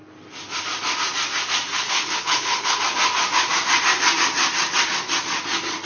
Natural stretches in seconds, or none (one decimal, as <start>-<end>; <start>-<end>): 0.0-1.7; 2.8-5.9